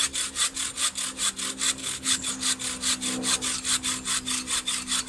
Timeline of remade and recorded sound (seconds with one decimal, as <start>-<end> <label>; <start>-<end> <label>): 0.0-1.8 recorded; 1.8-2.3 remade; 2.3-5.1 recorded